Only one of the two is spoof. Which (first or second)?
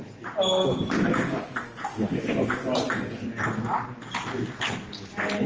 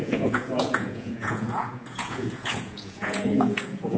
second